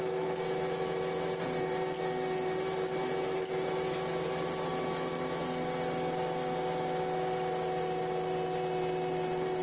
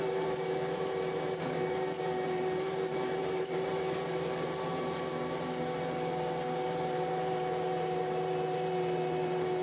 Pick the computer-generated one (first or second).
second